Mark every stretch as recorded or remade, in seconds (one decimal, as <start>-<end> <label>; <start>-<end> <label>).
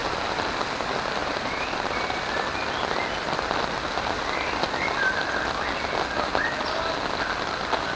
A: 0.0-1.2 recorded; 1.2-2.2 remade; 2.2-8.0 recorded